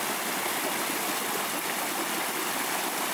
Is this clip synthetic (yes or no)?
no